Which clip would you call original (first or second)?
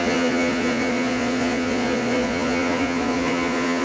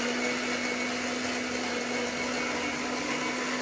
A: second